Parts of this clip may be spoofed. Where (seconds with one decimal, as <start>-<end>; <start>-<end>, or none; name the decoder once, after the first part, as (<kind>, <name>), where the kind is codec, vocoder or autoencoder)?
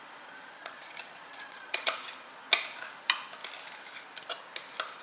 0.6-2.0 (vocoder, Vocos)